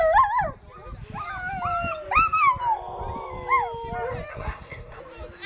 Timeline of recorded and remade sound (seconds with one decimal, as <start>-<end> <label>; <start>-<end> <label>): 0.0-4.3 recorded; 4.3-5.0 remade; 5.0-5.5 recorded